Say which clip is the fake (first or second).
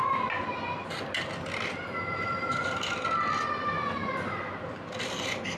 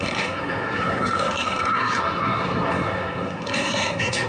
second